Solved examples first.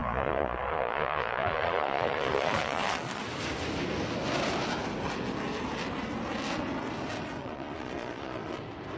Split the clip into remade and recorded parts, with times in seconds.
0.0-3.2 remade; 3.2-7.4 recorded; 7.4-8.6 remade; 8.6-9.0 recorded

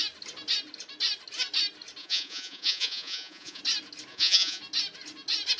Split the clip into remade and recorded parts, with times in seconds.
0.0-2.0 recorded; 2.0-3.6 remade; 3.6-4.1 recorded; 4.1-4.6 remade; 4.6-5.6 recorded

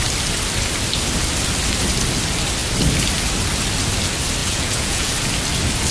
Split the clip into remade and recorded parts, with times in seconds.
0.0-4.4 recorded; 4.4-5.1 remade; 5.1-5.9 recorded

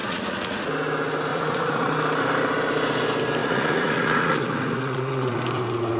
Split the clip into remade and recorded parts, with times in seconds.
0.0-0.7 remade; 0.7-1.3 recorded; 1.3-1.9 remade; 1.9-3.4 recorded; 3.4-5.4 remade; 5.4-6.0 recorded

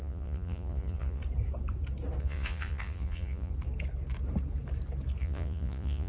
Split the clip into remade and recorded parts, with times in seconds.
0.0-1.2 remade; 1.2-2.2 recorded; 2.2-3.5 remade; 3.5-5.2 recorded; 5.2-6.1 remade

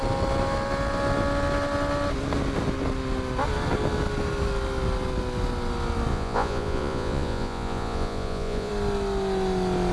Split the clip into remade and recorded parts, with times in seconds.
0.0-6.1 recorded; 6.1-8.7 remade; 8.7-9.9 recorded

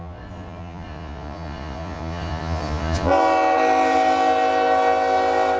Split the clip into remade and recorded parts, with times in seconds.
0.0-3.1 remade; 3.1-5.6 recorded